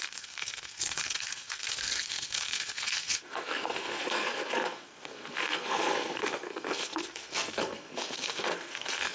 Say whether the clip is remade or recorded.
remade